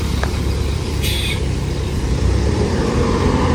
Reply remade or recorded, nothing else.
remade